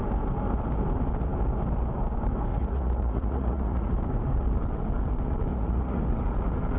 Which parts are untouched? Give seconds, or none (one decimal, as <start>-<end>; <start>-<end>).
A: 0.0-2.5; 3.9-5.5; 6.0-6.8